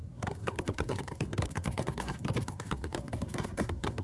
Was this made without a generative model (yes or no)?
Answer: no